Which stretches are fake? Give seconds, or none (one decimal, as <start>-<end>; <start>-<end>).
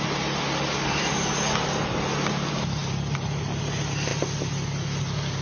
none